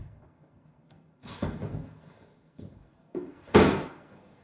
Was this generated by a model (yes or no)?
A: yes